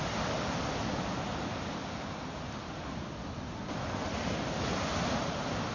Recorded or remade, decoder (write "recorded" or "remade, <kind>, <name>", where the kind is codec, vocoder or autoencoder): recorded